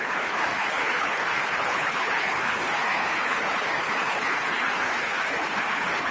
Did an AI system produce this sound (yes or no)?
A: yes